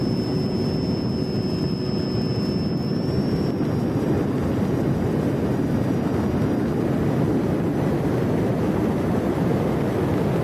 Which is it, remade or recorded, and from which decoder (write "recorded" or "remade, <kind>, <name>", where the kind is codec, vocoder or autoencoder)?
recorded